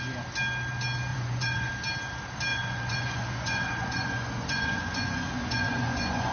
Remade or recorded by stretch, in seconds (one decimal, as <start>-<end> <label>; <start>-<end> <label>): 0.0-1.1 recorded; 1.1-1.7 remade; 1.7-2.5 recorded; 2.5-6.3 remade